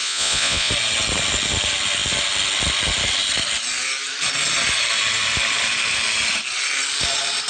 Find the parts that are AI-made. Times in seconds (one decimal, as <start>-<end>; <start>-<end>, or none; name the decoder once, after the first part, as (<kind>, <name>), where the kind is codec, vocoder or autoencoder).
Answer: 0.0-0.7 (vocoder, Vocos)

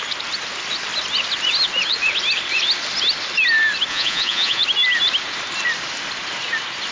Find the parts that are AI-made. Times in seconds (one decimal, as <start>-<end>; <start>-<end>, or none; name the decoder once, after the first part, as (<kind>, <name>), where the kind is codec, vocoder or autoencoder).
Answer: 3.9-4.6 (vocoder, Vocos)

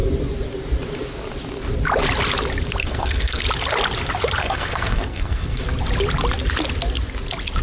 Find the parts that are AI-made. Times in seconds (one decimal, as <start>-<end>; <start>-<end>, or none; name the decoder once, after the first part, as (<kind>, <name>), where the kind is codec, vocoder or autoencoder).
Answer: 2.8-3.4 (codec, SNAC); 4.4-5.6

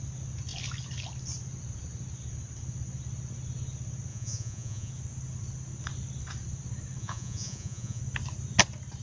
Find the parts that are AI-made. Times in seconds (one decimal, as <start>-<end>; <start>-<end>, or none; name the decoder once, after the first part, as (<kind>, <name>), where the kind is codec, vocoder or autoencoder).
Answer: 4.1-4.9 (vocoder, Vocos); 7.0-8.0

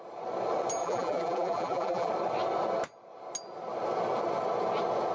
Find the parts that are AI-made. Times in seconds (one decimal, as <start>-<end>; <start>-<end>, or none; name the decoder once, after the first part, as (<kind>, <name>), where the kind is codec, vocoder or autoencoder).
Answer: 0.8-2.1 (vocoder, BigVGAN v2)

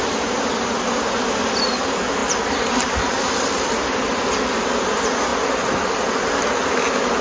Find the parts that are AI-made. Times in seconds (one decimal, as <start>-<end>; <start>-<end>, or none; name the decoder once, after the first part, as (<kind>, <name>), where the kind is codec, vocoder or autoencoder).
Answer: 2.2-4.6 (vocoder, BigVGAN v2)